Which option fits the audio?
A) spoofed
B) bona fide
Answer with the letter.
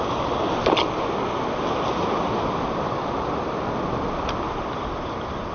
B